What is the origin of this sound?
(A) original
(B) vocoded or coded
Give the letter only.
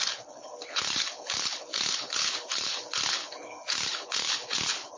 B